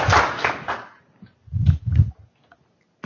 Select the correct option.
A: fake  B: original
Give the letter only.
B